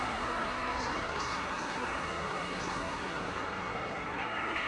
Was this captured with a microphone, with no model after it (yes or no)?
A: no